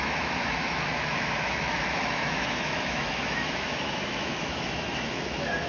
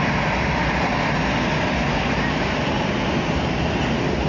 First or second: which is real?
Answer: second